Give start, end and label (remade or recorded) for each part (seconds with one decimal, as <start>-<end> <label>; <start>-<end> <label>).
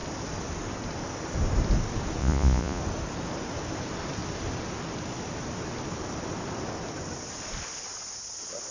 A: 0.0-2.2 recorded; 2.2-2.8 remade; 2.8-8.7 recorded